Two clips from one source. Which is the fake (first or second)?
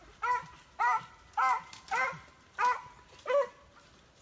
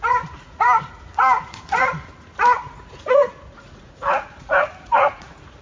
second